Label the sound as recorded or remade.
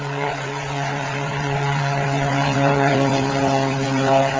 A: remade